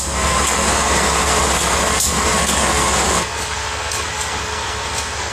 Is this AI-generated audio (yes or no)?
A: yes